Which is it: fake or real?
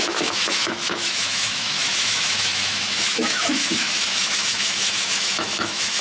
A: fake